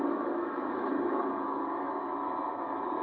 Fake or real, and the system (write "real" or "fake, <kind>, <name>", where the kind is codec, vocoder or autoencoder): fake, autoencoder, DAC-VAE